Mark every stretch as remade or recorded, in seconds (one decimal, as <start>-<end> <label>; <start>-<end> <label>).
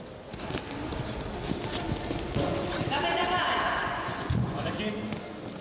0.0-3.8 recorded; 3.8-4.8 remade; 4.8-5.6 recorded